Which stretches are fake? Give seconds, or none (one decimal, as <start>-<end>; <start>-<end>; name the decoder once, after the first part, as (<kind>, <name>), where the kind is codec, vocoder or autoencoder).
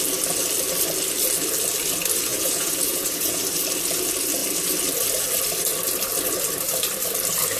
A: 2.3-3.4 (vocoder, Vocos)